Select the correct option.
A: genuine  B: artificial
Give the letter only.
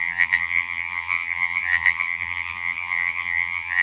B